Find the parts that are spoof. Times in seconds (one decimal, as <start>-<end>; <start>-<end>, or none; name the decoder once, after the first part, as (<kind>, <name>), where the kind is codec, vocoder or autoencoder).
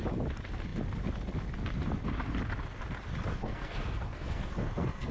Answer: 3.3-5.1 (codec, SNAC)